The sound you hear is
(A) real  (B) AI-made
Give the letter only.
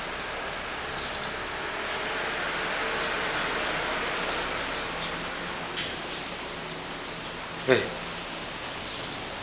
A